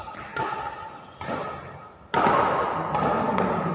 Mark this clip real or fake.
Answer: real